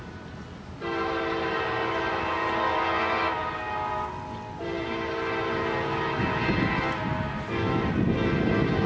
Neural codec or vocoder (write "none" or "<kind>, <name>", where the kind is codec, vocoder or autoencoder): none